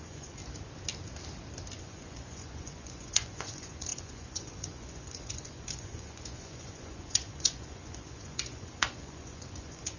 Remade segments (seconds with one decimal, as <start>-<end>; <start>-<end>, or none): 0.0-0.4; 1.8-10.0